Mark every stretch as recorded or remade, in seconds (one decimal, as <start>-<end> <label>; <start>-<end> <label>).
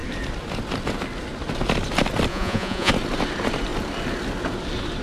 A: 0.0-2.3 recorded; 2.3-2.9 remade; 2.9-5.0 recorded